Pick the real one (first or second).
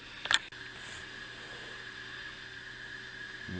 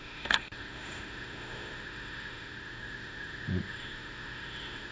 first